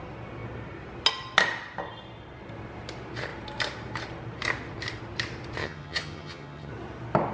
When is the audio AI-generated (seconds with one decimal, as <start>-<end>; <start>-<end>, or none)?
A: 5.6-6.7